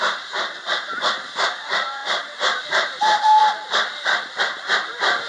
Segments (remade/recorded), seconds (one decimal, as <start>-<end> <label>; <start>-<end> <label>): 0.0-2.0 remade; 2.0-2.6 recorded; 2.6-3.4 remade; 3.4-4.4 recorded; 4.4-5.3 remade